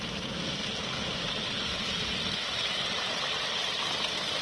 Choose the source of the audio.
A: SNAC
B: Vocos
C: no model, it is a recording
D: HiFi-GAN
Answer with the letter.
C